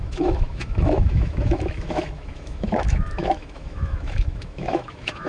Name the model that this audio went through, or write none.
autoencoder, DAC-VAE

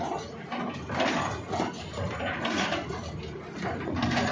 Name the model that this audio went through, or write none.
none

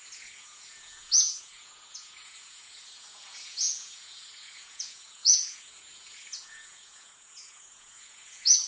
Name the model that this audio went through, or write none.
vocoder, Vocos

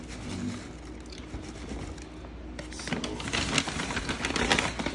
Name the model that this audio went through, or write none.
none